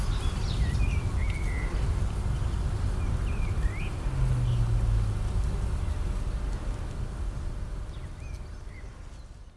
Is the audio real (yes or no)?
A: yes